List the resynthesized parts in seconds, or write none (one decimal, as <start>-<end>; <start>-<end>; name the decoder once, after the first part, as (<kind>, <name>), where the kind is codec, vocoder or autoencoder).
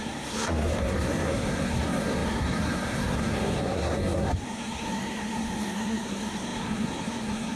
0.0-7.6 (codec, SNAC)